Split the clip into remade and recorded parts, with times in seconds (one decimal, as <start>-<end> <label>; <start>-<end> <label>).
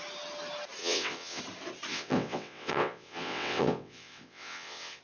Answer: 0.0-0.8 recorded; 0.8-1.4 remade; 1.4-1.9 recorded; 1.9-5.0 remade